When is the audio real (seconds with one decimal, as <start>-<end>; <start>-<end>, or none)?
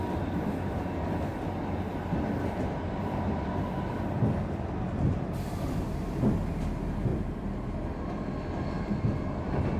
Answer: 0.0-7.1; 7.7-9.8